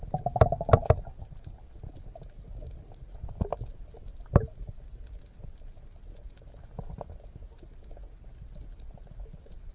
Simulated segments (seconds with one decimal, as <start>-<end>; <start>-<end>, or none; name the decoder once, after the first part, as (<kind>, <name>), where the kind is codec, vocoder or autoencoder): none